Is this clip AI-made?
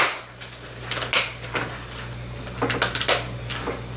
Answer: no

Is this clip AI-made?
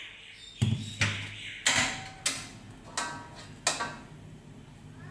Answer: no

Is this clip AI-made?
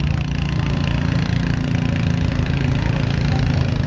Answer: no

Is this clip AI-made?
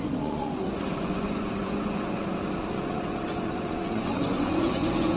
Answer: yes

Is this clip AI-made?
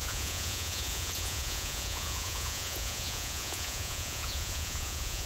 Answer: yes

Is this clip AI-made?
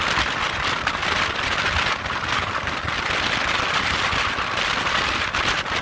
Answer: no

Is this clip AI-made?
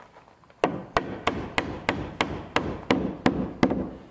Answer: no